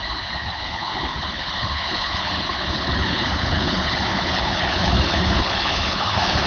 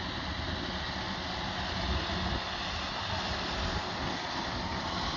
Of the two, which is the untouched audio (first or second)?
second